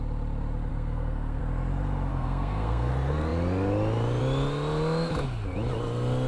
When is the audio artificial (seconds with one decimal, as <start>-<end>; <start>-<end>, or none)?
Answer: 0.7-1.4; 2.1-2.9